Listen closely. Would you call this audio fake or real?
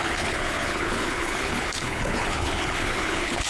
fake